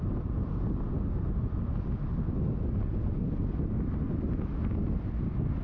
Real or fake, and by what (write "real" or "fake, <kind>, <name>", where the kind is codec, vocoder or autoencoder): real